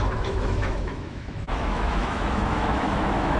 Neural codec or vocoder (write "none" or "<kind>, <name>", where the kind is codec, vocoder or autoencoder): autoencoder, DAC-VAE